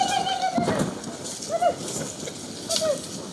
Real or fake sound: real